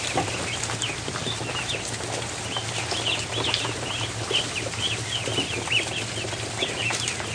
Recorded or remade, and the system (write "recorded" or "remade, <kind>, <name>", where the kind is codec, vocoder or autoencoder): recorded